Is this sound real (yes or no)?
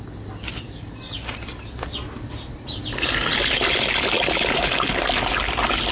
yes